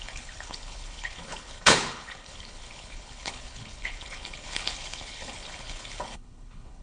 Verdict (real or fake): fake